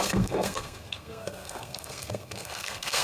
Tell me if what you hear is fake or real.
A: fake